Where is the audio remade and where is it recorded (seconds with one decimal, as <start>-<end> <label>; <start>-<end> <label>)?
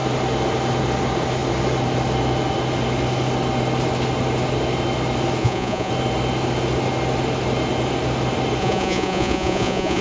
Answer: 0.0-5.4 recorded; 5.4-5.9 remade; 5.9-8.6 recorded; 8.6-10.0 remade